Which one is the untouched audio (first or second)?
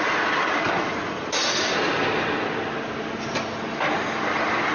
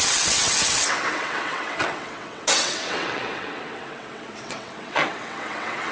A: first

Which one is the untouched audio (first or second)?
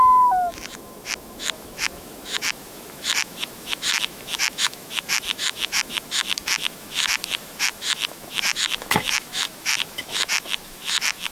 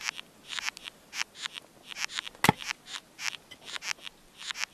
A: second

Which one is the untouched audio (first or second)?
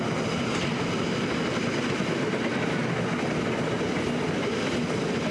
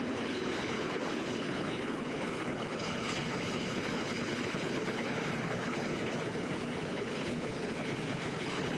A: first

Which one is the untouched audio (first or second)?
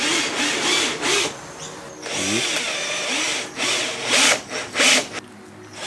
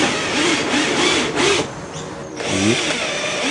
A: first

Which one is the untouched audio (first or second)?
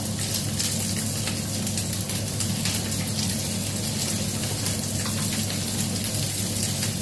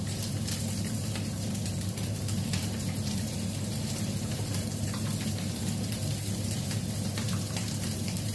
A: first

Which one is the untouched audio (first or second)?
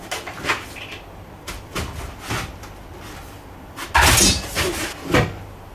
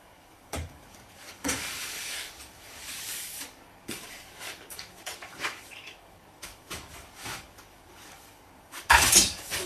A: first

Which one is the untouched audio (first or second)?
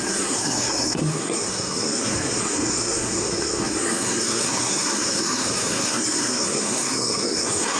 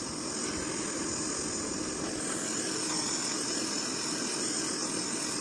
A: second